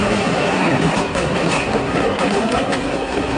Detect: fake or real fake